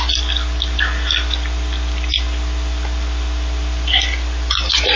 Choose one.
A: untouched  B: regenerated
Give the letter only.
A